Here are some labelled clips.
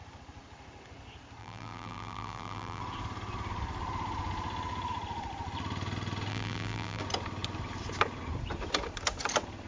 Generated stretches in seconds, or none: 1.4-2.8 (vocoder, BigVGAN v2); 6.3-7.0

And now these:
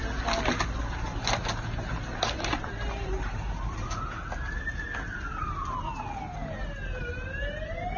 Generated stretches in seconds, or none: 0.8-4.2 (vocoder, BigVGAN v2); 7.0-8.0

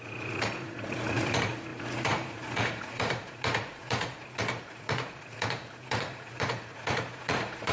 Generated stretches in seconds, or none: 0.0-7.7 (vocoder, Vocos)

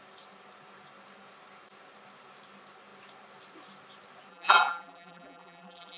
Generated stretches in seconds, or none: 4.3-6.0 (vocoder, BigVGAN v2)

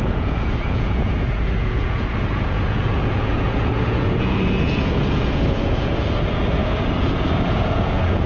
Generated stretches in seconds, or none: 0.0-6.6 (vocoder, Vocos); 7.1-8.3